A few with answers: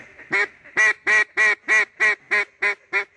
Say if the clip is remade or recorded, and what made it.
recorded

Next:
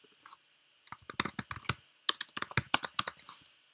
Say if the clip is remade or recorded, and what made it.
recorded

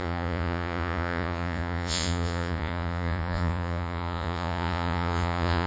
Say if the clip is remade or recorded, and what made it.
remade, vocoder, Vocos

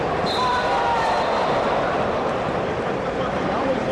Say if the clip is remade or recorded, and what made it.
remade, vocoder, BigVGAN v2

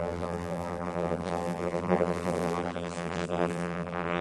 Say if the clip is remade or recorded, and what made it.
remade, vocoder, BigVGAN v2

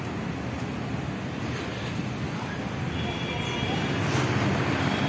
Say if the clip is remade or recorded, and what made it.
recorded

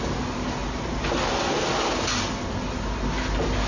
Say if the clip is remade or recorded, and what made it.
recorded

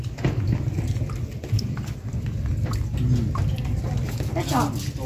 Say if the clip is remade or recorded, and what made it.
recorded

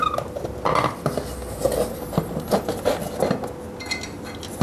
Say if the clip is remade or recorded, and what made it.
recorded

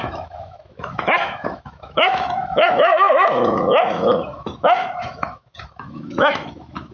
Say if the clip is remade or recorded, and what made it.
remade, autoencoder, DAC-VAE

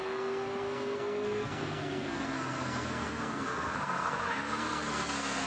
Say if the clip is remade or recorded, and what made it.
remade, codec, SNAC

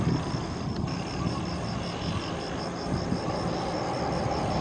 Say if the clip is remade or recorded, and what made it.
recorded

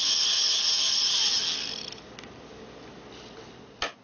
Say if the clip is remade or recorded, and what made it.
recorded